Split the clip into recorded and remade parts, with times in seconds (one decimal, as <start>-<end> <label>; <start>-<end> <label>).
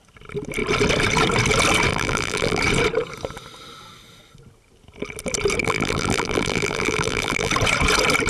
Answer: 0.0-1.9 recorded; 1.9-2.6 remade; 2.6-5.6 recorded; 5.6-7.5 remade; 7.5-8.3 recorded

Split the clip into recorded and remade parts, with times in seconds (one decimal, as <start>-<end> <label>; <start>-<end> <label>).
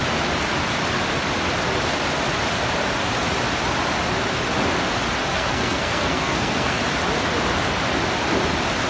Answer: 0.0-5.3 recorded; 5.3-6.8 remade; 6.8-8.9 recorded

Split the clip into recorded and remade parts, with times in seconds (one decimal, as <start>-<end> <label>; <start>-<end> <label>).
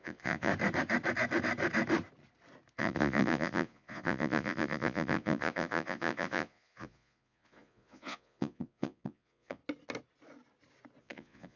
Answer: 0.0-0.5 remade; 0.5-2.8 recorded; 2.8-9.6 remade; 9.6-11.0 recorded; 11.0-11.6 remade